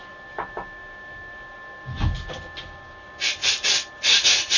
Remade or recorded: recorded